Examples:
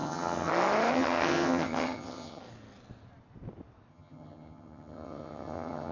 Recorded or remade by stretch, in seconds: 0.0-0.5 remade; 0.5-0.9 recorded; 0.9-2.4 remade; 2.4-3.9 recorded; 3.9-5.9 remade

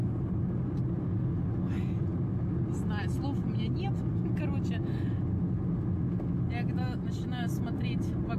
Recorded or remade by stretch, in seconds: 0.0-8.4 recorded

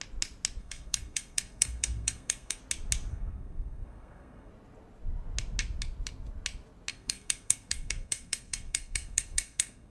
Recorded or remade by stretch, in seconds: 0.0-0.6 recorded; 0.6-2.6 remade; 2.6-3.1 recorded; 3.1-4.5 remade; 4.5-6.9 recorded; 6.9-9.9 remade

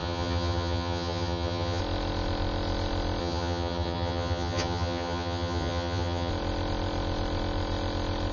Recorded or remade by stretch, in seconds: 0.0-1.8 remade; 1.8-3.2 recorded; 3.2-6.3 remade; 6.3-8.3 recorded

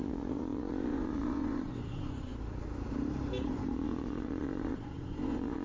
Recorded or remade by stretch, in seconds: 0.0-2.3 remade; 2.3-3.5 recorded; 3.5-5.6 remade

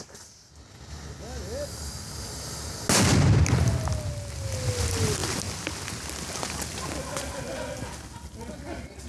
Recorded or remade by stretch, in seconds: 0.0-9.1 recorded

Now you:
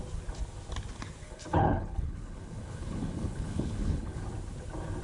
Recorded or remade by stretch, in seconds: 0.0-1.2 recorded; 1.2-4.2 remade; 4.2-5.0 recorded